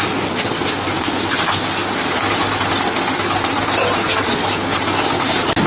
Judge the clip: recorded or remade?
recorded